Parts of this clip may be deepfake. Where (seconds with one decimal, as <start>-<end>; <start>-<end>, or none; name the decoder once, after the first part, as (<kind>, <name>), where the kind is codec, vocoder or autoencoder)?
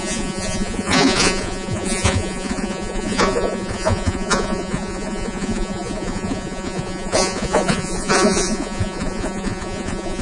0.0-10.2 (vocoder, Vocos)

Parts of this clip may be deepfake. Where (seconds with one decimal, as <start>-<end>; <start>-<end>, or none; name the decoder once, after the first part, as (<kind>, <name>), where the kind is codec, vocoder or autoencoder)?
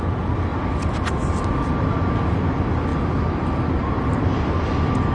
none